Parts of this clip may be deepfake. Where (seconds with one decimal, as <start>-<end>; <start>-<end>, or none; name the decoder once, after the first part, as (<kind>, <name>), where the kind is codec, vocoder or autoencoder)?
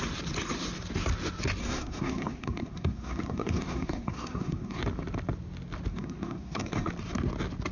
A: 1.6-4.8 (codec, SNAC); 5.9-6.9